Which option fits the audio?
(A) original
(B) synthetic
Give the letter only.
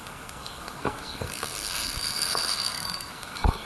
B